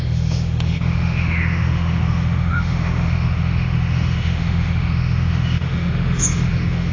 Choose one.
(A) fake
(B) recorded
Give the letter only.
A